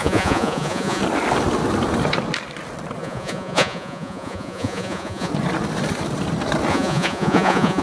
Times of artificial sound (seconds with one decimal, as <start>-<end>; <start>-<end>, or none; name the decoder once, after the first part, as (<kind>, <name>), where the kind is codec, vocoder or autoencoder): 0.0-1.0 (vocoder, Vocos); 3.0-5.3; 6.7-7.8